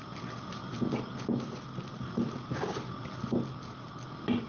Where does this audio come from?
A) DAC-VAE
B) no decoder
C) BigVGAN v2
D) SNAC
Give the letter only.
B